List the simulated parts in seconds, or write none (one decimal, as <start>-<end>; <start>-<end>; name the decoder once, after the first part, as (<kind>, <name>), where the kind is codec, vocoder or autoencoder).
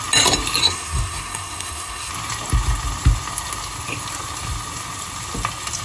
0.6-2.1 (codec, SNAC)